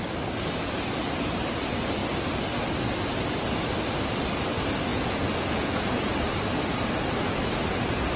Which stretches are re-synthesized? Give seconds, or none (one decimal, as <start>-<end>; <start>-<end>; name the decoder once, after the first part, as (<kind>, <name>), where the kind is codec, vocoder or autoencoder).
4.9-6.1 (vocoder, Vocos)